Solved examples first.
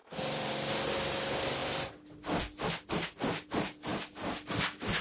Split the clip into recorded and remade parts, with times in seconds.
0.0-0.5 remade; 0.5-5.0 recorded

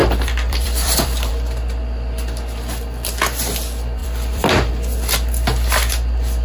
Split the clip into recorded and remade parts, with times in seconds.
0.0-1.3 remade; 1.3-4.0 recorded; 4.0-4.7 remade; 4.7-6.4 recorded

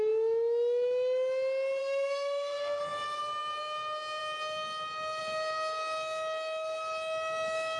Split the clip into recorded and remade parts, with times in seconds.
0.0-1.8 recorded; 1.8-2.8 remade; 2.8-7.8 recorded

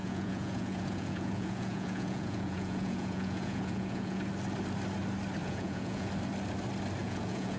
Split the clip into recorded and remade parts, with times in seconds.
0.0-4.2 remade; 4.2-5.4 recorded; 5.4-6.1 remade; 6.1-7.0 recorded; 7.0-7.6 remade

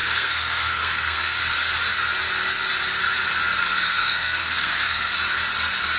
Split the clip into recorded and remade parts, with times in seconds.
0.0-1.4 remade; 1.4-3.6 recorded; 3.6-5.1 remade; 5.1-6.0 recorded